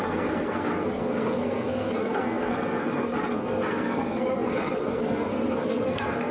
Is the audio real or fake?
fake